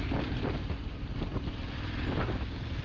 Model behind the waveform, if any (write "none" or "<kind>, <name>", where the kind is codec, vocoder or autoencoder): vocoder, BigVGAN v2